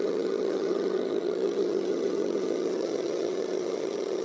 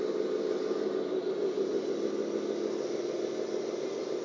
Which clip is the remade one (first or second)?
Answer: first